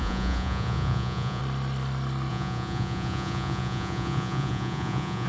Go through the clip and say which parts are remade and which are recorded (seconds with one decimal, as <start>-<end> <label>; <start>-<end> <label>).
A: 0.0-1.4 remade; 1.4-2.3 recorded; 2.3-5.3 remade